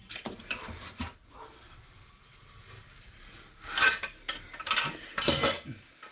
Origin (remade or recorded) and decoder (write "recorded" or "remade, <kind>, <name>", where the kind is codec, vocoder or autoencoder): recorded